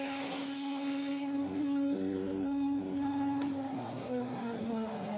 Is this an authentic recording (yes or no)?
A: no